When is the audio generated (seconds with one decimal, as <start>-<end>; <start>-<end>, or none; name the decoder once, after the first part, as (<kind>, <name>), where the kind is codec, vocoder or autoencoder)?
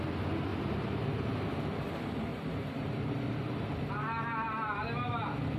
0.5-1.5 (vocoder, BigVGAN v2); 2.3-3.9